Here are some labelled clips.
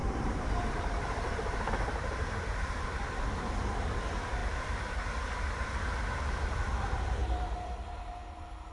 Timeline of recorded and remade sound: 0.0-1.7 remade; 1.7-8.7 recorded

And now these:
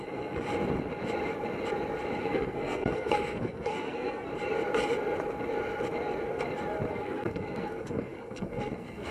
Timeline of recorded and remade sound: 0.0-0.4 remade; 0.4-2.2 recorded; 2.2-4.3 remade; 4.3-6.9 recorded; 6.9-9.1 remade

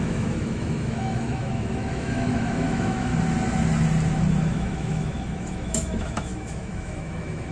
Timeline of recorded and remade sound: 0.0-3.1 remade; 3.1-4.5 recorded; 4.5-7.5 remade

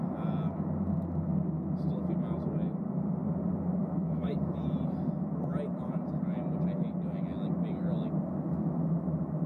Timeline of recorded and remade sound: 0.0-3.8 recorded; 3.8-4.3 remade; 4.3-9.5 recorded

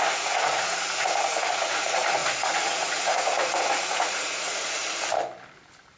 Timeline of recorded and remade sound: 0.0-4.8 remade; 4.8-6.0 recorded

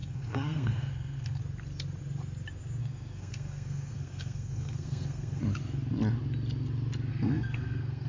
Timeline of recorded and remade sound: 0.0-1.4 remade; 1.4-2.8 recorded; 2.8-5.4 remade; 5.4-7.1 recorded; 7.1-8.1 remade